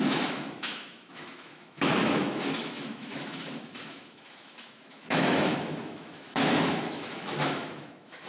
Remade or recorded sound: remade